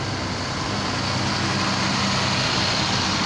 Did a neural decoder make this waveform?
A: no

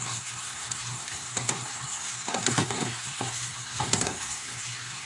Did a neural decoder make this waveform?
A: yes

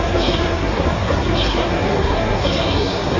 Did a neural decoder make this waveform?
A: yes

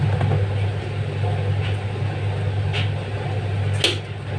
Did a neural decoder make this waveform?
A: no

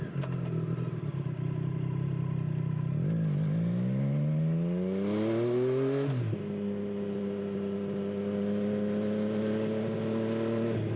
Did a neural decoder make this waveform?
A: no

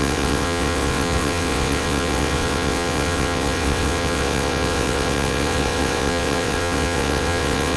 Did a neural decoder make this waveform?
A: yes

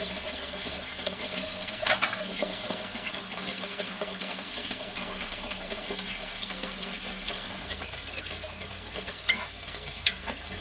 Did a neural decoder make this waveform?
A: yes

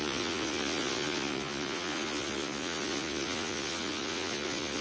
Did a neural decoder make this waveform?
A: yes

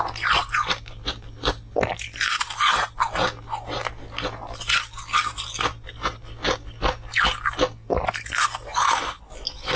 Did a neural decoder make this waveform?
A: no